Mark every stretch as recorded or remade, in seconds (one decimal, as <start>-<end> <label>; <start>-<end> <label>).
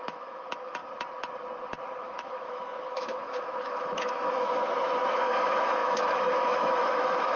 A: 0.0-0.8 remade; 0.8-2.0 recorded; 2.0-7.4 remade